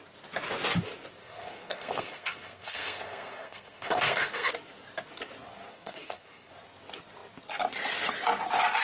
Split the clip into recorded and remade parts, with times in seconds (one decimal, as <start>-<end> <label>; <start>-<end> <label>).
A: 0.0-1.2 recorded; 1.2-4.5 remade; 4.5-5.7 recorded; 5.7-6.5 remade; 6.5-8.8 recorded